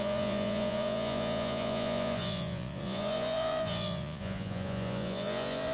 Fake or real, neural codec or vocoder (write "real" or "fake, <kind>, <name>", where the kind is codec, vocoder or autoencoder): fake, vocoder, Vocos